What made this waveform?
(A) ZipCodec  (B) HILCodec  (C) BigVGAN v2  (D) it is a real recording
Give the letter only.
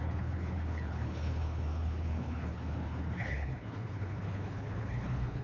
B